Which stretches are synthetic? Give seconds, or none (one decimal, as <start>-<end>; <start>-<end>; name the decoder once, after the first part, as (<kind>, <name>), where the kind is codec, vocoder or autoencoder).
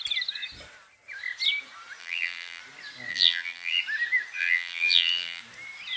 2.0-2.6 (vocoder, BigVGAN v2); 3.1-3.8; 4.4-5.4